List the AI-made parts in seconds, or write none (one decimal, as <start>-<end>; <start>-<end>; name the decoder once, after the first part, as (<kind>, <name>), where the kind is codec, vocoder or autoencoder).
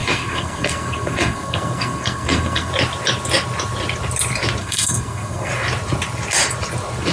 0.0-2.7 (codec, SNAC); 4.6-5.5